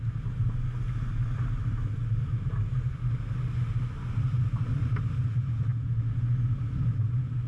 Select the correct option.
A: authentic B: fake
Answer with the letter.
A